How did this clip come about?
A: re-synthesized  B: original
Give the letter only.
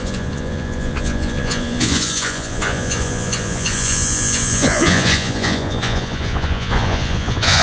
A